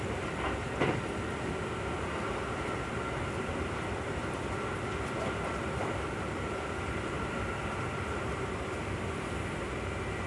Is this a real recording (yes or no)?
yes